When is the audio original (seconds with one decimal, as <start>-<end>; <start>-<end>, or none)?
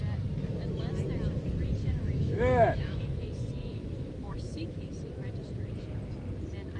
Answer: 0.0-1.8; 3.2-3.7; 4.9-6.8